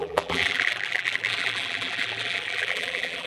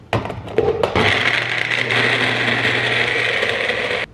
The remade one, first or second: first